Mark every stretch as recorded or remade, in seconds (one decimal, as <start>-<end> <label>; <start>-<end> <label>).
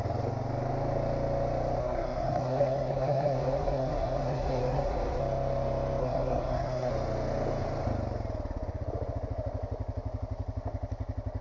0.0-1.8 recorded; 1.8-5.2 remade; 5.2-6.0 recorded; 6.0-6.9 remade; 6.9-11.4 recorded